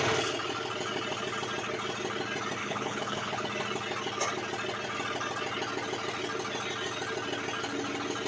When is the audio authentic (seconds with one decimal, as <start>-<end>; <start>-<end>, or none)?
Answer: 0.0-2.6; 3.4-8.3